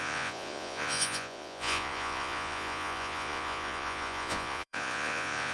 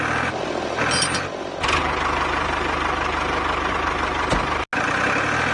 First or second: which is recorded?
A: second